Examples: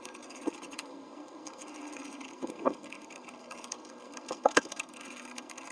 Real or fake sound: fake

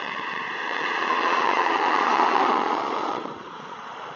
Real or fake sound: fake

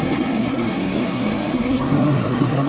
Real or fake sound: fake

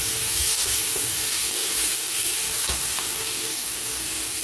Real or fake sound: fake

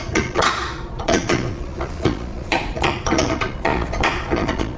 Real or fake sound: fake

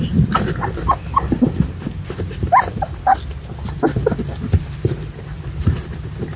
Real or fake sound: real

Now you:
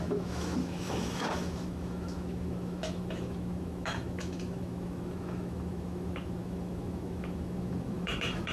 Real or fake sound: fake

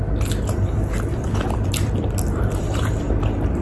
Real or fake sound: real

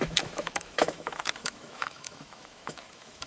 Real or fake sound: fake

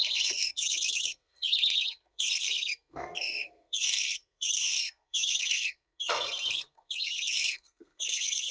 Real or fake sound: fake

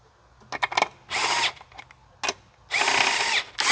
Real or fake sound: real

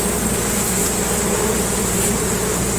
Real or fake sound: real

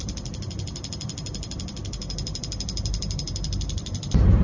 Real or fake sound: fake